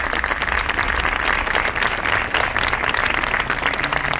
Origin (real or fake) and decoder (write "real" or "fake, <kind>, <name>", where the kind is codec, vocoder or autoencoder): real